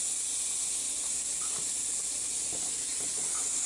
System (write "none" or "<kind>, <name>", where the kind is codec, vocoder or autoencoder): none